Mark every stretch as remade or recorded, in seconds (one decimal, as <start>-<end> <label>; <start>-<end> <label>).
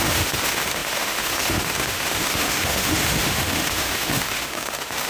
0.0-5.1 remade